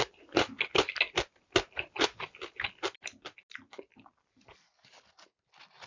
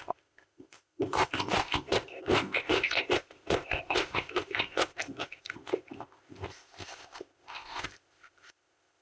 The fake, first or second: second